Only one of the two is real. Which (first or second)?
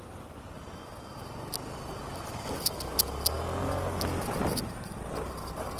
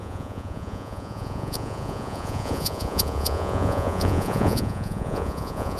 first